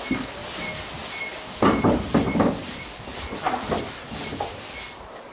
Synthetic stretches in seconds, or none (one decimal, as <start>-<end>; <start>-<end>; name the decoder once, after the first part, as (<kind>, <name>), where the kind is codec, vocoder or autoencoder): 0.4-1.1 (vocoder, BigVGAN v2); 2.6-3.4